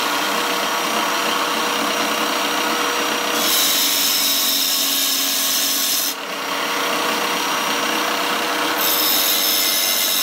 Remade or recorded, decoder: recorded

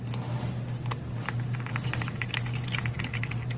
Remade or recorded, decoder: recorded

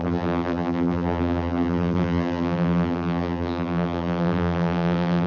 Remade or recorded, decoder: remade, vocoder, BigVGAN v2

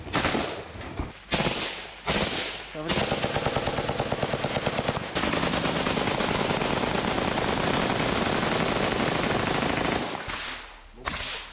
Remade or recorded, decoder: recorded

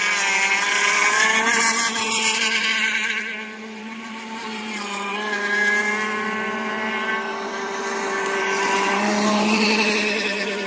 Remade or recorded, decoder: remade, vocoder, BigVGAN v2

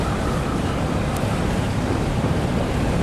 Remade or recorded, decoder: recorded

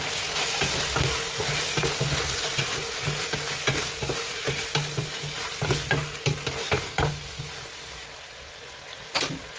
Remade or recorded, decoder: recorded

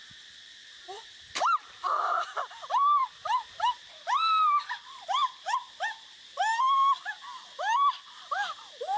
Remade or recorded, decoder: remade, vocoder, BigVGAN v2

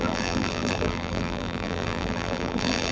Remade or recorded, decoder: remade, vocoder, BigVGAN v2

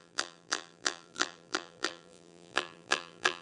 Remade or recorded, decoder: remade, vocoder, BigVGAN v2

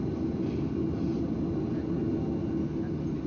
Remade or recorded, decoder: recorded